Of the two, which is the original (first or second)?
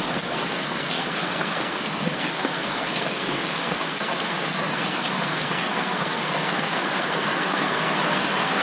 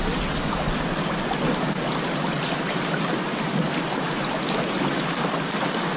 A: second